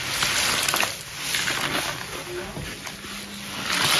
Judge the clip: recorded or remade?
recorded